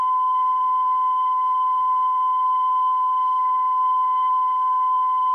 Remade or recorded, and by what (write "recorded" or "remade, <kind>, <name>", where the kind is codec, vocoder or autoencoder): remade, codec, SNAC